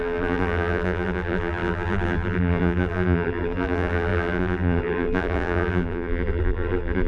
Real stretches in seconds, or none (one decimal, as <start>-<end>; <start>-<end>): none